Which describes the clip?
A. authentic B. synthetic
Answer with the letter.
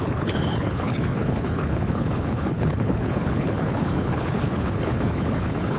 B